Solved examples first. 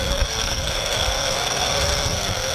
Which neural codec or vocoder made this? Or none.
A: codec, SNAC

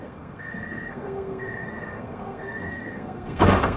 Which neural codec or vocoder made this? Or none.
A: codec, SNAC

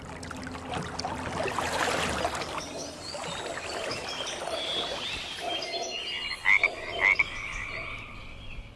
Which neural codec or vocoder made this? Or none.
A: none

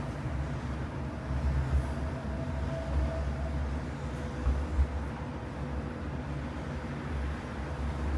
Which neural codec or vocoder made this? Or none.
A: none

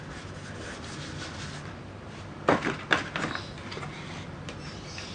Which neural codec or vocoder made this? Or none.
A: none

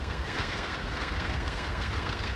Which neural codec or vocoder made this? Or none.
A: codec, SNAC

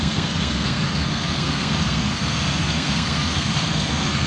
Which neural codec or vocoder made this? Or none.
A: codec, SNAC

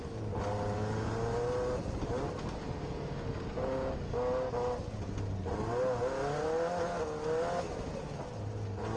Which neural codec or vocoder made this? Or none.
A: none